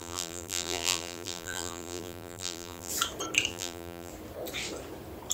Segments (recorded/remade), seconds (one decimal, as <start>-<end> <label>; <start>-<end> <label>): 0.0-2.9 remade; 2.9-3.5 recorded; 3.5-4.1 remade; 4.1-5.3 recorded